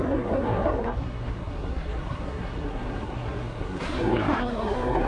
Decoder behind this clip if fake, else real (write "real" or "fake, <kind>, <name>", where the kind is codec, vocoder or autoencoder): fake, codec, SNAC